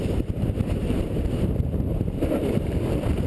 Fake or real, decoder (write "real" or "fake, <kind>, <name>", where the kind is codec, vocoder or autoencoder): fake, vocoder, BigVGAN v2